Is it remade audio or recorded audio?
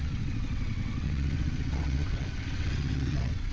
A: remade